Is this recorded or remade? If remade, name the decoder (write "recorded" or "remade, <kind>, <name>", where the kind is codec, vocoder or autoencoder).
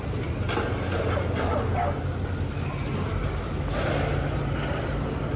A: recorded